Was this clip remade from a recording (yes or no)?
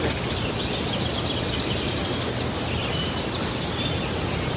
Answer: no